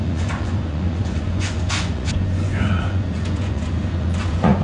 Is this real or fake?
fake